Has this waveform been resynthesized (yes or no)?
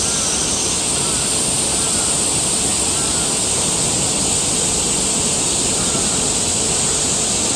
no